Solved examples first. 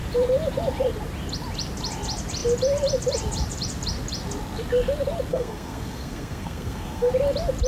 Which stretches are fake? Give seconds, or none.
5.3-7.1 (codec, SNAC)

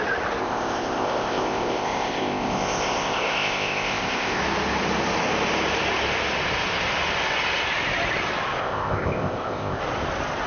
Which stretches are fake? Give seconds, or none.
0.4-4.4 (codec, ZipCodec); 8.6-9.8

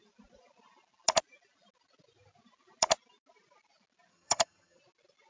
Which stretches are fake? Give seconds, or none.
4.1-4.8 (vocoder, HiFi-GAN)

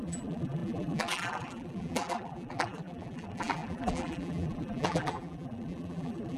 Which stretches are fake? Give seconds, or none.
0.0-6.4 (vocoder, BigVGAN v2)

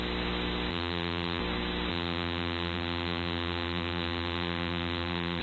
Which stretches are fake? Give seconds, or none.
0.7-1.4 (vocoder, BigVGAN v2); 1.9-5.4

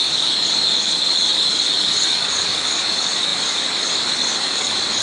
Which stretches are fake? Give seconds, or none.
0.0-5.0 (codec, DAC)